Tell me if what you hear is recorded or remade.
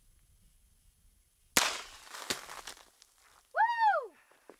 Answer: recorded